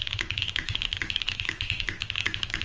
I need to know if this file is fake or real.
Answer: fake